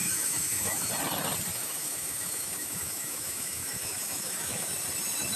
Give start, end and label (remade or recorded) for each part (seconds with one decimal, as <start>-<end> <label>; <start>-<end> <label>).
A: 0.0-0.9 remade; 0.9-1.5 recorded; 1.5-4.7 remade; 4.7-5.4 recorded